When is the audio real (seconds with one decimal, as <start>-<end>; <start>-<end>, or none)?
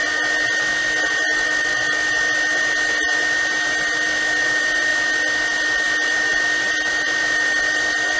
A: 0.0-8.2